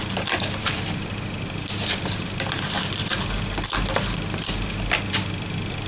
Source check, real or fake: real